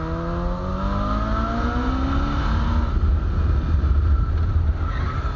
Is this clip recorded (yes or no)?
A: yes